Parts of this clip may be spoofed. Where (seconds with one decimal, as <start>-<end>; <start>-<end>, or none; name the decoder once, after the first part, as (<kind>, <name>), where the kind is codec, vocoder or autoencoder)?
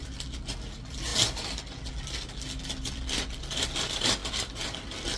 none